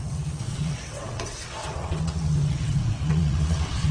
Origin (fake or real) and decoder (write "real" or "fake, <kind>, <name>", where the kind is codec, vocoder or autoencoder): fake, vocoder, WaveNeXt